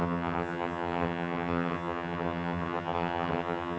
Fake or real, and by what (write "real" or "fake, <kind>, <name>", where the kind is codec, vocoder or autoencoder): fake, vocoder, HiFi-GAN